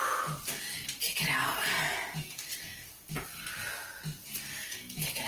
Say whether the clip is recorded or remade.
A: recorded